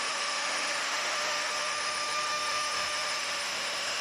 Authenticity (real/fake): fake